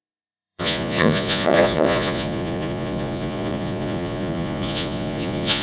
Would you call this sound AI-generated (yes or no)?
yes